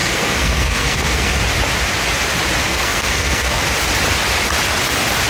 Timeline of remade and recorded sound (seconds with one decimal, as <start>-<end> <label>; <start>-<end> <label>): 0.0-1.4 remade; 1.4-2.7 recorded; 2.7-3.6 remade; 3.6-5.3 recorded